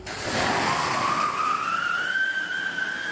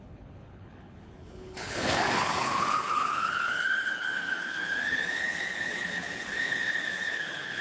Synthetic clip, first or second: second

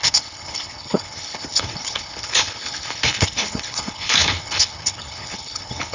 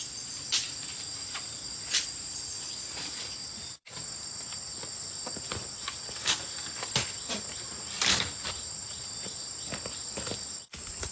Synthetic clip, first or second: first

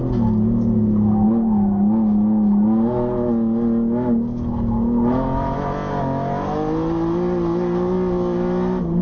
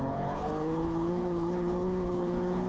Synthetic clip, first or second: second